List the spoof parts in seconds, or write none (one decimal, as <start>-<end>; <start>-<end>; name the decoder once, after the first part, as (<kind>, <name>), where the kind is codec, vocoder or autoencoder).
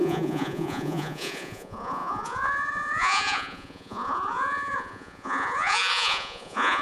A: 0.0-6.8 (vocoder, Vocos)